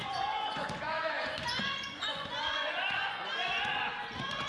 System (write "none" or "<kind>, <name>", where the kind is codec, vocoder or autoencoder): vocoder, Vocos